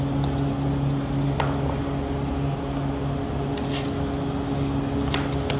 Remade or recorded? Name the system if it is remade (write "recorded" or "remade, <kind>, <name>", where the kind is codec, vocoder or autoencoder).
recorded